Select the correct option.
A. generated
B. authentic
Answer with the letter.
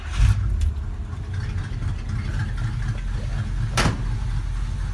B